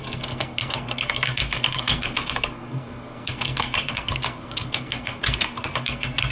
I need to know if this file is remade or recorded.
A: remade